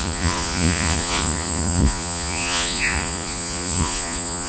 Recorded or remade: remade